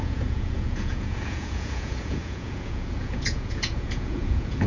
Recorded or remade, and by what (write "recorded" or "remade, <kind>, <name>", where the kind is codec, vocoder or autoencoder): remade, vocoder, Vocos